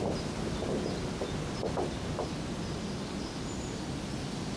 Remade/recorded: recorded